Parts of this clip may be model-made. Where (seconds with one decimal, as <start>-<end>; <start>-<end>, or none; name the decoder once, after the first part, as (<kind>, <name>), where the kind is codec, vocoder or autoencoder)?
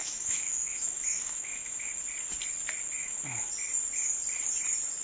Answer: 0.0-1.9 (autoencoder, DAC-VAE); 3.0-3.5